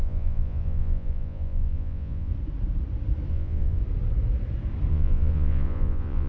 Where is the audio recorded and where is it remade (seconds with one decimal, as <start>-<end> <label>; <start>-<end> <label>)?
0.0-2.3 remade; 2.3-3.3 recorded; 3.3-3.8 remade; 3.8-4.9 recorded; 4.9-6.3 remade